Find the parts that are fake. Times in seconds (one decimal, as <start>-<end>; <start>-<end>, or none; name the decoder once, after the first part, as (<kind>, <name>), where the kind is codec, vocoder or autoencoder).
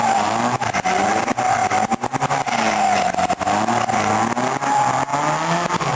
0.0-5.1 (vocoder, BigVGAN v2)